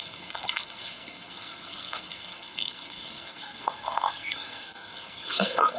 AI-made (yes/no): yes